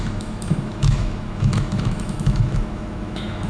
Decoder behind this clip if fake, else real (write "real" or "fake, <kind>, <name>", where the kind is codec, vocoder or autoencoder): fake, autoencoder, DAC-VAE